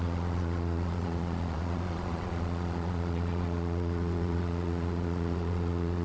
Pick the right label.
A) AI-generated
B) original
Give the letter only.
A